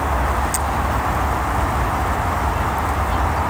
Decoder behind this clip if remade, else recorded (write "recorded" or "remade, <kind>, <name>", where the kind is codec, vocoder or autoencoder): recorded